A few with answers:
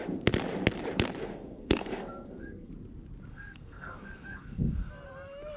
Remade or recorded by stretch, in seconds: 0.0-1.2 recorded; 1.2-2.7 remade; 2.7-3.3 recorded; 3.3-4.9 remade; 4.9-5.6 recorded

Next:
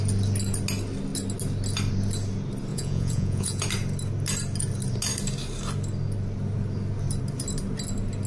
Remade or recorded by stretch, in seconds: 0.0-2.7 recorded; 2.7-3.6 remade; 3.6-8.3 recorded

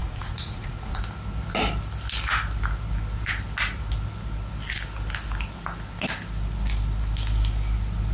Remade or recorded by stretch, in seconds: 0.0-1.0 remade; 1.0-8.1 recorded

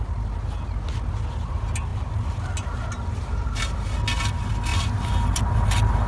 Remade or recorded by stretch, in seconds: 0.0-6.1 recorded

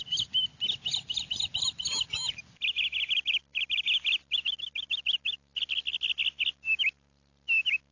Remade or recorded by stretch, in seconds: 0.0-7.9 recorded